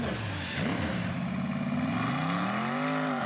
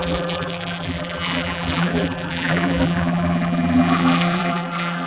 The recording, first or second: first